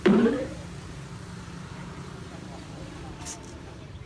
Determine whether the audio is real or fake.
fake